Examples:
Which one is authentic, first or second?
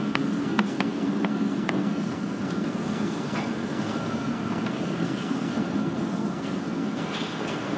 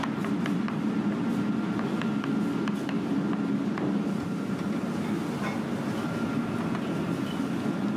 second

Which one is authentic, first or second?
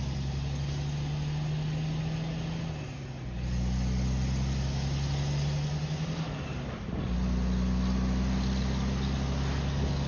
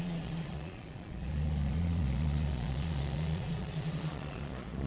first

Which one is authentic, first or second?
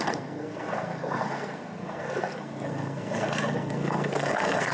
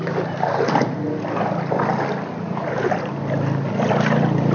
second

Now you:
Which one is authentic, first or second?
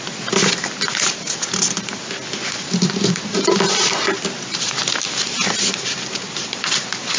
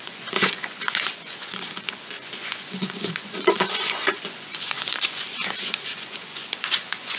first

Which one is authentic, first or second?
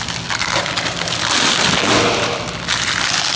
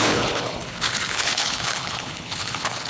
first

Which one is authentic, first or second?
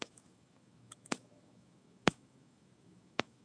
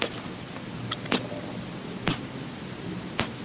second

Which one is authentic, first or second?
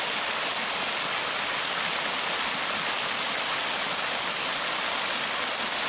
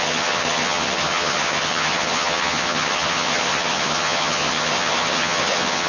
first